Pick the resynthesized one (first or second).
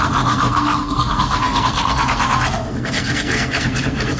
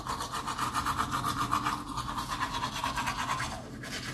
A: first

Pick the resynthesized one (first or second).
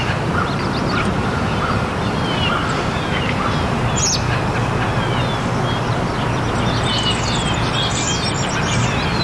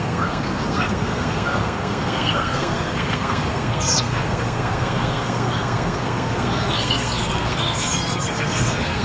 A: second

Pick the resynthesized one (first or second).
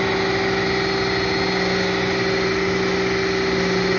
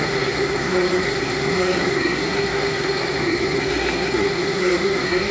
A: second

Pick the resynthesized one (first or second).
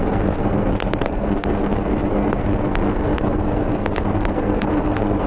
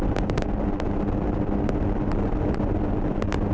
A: first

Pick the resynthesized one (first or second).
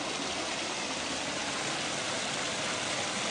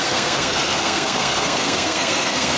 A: second